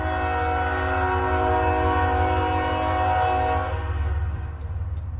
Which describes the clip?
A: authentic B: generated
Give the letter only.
A